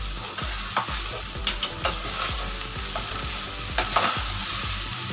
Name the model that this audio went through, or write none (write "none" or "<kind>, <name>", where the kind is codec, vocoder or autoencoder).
none